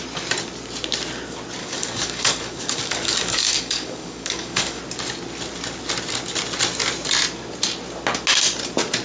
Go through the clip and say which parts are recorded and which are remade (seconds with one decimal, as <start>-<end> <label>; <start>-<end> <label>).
0.0-1.6 recorded; 1.6-4.8 remade; 4.8-9.0 recorded